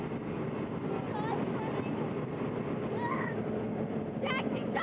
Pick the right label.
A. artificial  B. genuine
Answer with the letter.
B